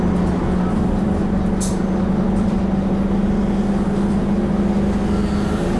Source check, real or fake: real